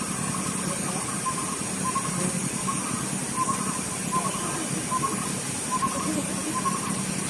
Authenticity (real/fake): real